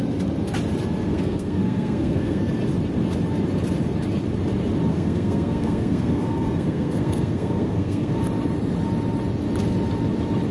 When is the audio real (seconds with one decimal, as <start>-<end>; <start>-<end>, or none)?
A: 0.0-1.1; 2.5-4.9; 8.2-10.5